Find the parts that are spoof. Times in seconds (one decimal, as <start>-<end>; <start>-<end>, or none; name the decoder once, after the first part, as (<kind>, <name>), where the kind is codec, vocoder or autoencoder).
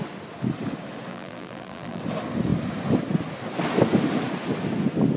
1.1-2.0 (vocoder, BigVGAN v2)